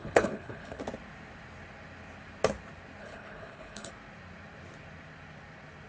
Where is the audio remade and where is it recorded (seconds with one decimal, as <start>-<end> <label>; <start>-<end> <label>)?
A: 0.0-0.8 remade; 0.8-3.0 recorded; 3.0-3.9 remade; 3.9-5.9 recorded